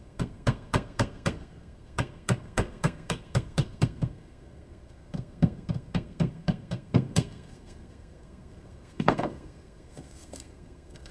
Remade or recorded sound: remade